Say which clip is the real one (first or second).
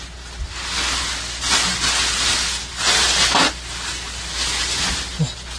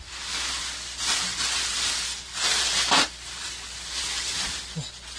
first